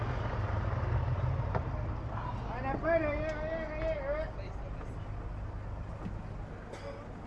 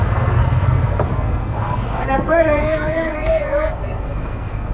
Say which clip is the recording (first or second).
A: first